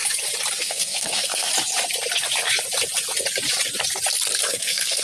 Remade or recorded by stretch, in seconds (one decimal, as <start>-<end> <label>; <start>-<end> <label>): 0.0-0.6 recorded; 0.6-1.5 remade; 1.5-4.5 recorded; 4.5-5.0 remade